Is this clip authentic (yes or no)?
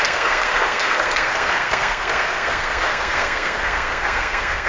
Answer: no